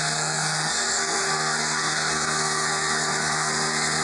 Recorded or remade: remade